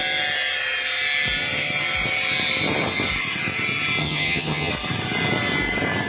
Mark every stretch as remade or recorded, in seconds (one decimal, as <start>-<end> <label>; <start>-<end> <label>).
0.0-4.0 recorded; 4.0-4.7 remade; 4.7-6.1 recorded